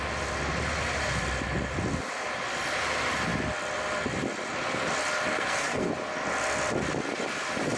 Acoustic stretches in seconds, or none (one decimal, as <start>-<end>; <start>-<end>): 0.0-5.3; 5.9-7.8